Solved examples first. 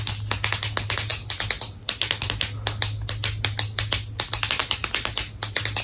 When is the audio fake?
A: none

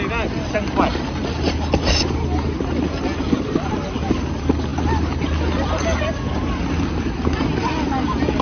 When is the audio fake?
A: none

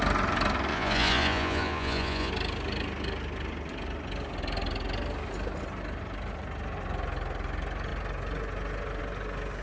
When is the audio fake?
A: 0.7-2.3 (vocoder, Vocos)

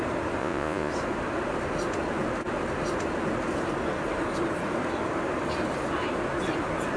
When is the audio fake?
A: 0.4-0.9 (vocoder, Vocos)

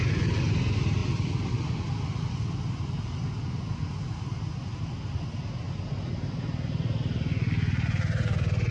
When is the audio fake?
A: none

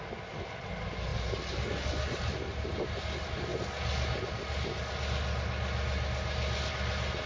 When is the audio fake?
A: none

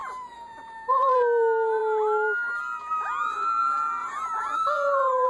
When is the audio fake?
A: 0.0-1.2 (vocoder, Vocos); 4.0-5.3